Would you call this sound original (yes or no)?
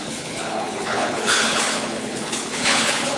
no